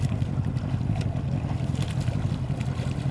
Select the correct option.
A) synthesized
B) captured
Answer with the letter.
B